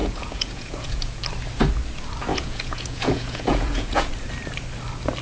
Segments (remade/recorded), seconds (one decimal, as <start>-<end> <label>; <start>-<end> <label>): 0.0-1.2 remade; 1.2-2.3 recorded; 2.3-4.1 remade; 4.1-5.2 recorded